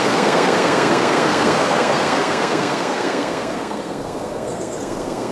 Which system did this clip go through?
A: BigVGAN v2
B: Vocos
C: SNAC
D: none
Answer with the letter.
C